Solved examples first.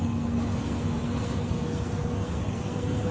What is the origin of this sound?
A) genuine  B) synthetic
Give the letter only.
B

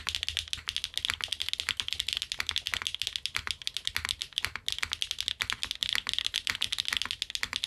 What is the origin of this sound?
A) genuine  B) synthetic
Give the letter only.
A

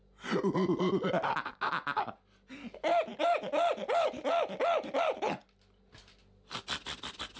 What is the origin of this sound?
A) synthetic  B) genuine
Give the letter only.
B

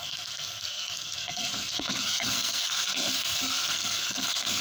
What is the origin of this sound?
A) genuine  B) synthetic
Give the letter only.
B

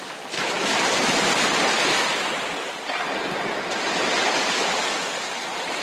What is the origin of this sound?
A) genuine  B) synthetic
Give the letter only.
B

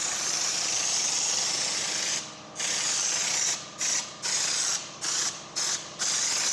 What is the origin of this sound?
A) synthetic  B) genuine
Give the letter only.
A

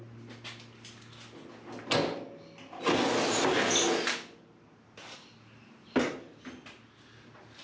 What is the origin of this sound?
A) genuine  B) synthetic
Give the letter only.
A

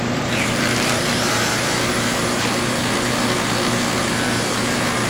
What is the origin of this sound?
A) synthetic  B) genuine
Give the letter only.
A